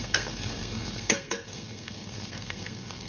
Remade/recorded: remade